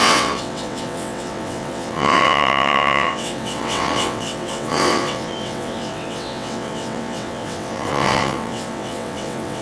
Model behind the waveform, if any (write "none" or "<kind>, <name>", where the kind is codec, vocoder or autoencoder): vocoder, WaveNeXt